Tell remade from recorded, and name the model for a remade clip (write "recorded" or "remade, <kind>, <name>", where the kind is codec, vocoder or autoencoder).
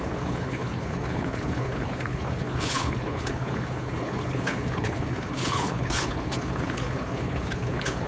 remade, codec, HILCodec